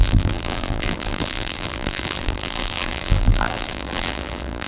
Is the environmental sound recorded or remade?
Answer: remade